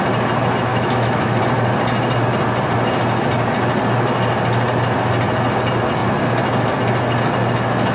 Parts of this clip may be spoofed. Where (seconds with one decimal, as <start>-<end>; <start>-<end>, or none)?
0.7-1.4